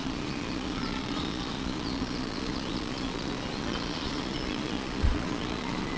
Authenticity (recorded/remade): remade